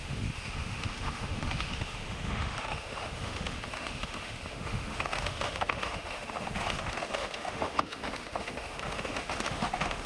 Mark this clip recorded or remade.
remade